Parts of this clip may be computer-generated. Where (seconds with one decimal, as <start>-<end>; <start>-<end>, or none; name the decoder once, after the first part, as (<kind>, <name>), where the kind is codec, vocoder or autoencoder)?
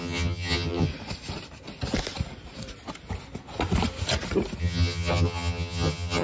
0.0-0.9 (vocoder, HiFi-GAN); 4.6-6.2